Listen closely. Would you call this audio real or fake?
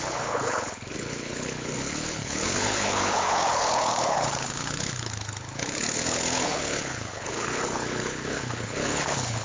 fake